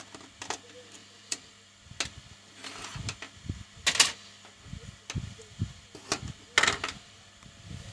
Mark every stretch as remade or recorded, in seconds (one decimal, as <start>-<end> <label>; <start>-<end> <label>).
0.0-1.0 recorded; 1.0-1.8 remade; 1.8-7.9 recorded